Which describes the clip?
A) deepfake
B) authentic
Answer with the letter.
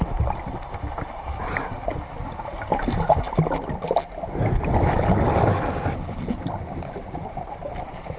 B